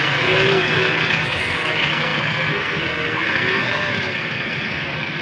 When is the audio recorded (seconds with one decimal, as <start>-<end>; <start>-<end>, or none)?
none